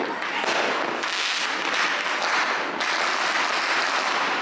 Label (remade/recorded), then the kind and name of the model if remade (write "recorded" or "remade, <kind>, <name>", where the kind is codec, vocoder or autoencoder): recorded